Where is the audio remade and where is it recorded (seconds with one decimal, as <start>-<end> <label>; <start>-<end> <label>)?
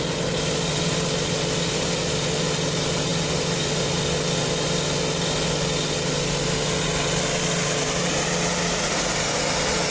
0.0-9.9 recorded